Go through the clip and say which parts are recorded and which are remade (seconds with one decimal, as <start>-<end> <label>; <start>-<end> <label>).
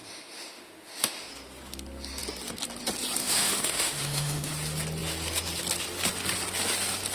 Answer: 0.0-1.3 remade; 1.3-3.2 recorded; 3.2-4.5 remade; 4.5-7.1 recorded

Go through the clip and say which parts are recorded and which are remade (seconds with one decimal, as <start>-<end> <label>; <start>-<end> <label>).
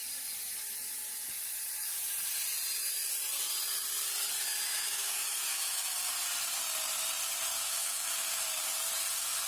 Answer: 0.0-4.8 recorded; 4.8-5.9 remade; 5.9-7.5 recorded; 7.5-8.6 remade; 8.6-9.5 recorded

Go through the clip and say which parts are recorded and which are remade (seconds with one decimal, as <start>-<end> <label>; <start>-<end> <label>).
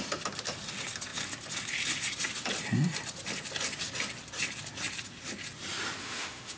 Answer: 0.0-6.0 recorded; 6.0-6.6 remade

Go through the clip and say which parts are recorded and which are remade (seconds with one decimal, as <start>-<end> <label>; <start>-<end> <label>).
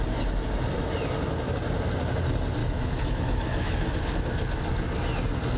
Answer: 0.0-2.6 recorded; 2.6-4.0 remade; 4.0-5.6 recorded